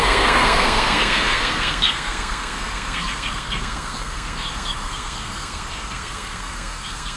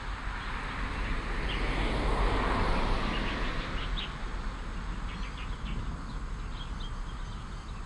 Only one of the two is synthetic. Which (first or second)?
first